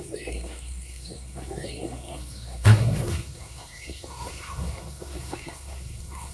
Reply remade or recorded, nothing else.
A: remade